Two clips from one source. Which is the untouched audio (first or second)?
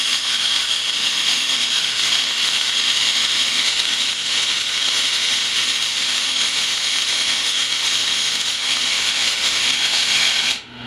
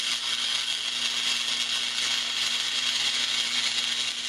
second